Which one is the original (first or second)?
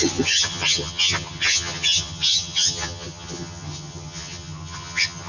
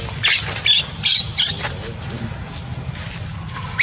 second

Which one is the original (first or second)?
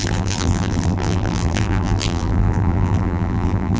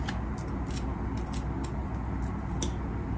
second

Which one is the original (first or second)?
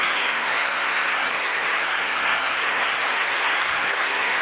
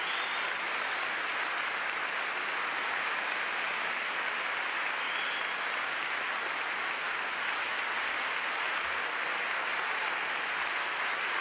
second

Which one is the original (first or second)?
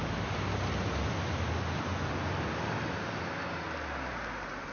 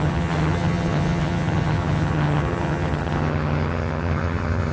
first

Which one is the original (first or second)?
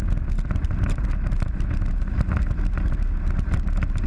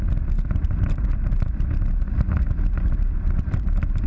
first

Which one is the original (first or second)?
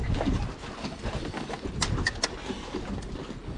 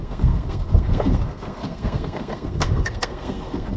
first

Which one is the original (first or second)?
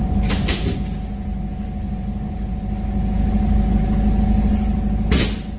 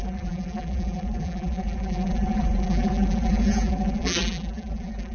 first